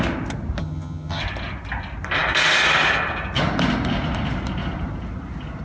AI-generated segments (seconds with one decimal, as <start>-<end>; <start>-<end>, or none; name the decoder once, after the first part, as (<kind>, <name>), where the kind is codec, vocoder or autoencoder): 0.6-1.2 (vocoder, HiFi-GAN)